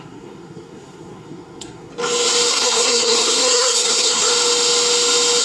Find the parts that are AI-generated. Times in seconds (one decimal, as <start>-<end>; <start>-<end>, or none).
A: 0.0-1.9; 2.5-4.3